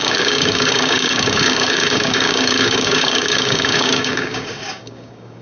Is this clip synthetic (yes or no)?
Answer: yes